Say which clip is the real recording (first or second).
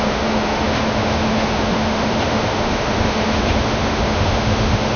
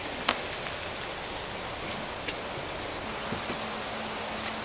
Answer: second